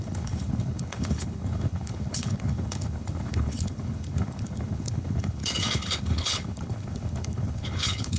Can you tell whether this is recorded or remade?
remade